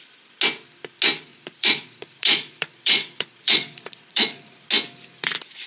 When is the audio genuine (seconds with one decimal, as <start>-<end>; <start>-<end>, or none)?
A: 0.0-1.3; 4.7-5.7